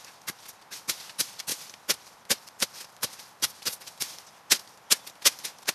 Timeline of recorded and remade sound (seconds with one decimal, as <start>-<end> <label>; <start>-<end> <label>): 0.0-5.7 recorded